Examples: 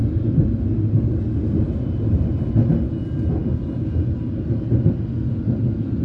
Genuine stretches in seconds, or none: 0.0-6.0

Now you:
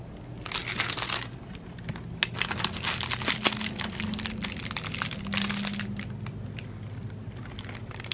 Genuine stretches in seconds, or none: 0.0-8.1